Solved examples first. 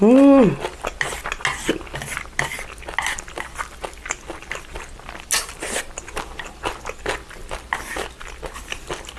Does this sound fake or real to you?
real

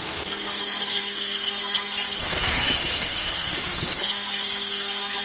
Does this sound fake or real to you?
fake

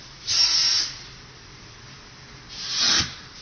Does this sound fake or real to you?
real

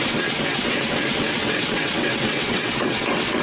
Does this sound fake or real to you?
fake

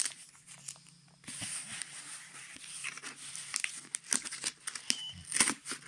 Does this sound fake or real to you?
real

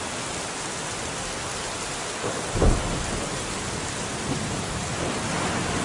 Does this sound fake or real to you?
real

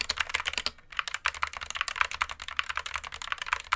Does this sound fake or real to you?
real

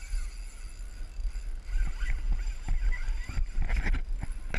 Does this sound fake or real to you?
real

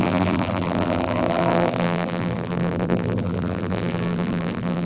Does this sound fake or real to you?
fake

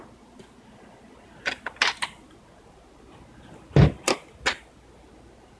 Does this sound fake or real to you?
real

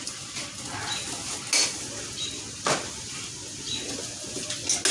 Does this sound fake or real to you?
real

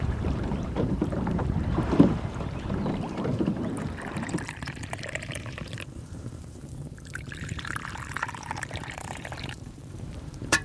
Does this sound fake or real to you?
fake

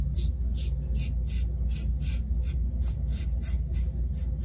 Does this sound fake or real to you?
real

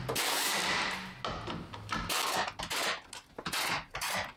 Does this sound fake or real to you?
real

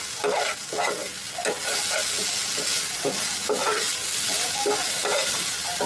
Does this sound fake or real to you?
real